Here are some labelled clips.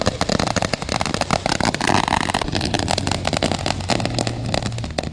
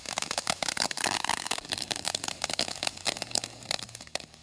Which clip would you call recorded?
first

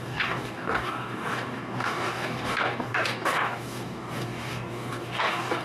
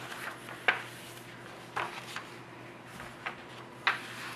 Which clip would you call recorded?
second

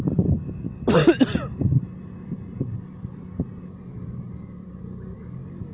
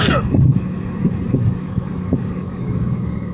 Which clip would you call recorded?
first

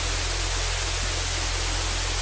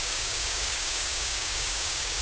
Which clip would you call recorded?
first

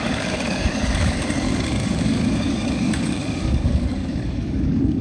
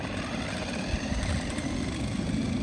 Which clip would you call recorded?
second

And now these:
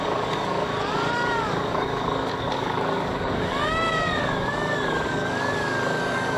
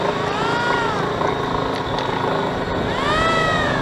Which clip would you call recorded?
second